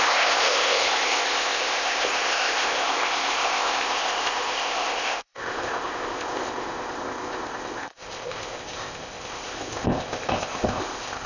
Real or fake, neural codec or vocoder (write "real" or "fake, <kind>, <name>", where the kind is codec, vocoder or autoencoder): fake, codec, ZipCodec